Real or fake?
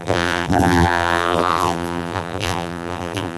fake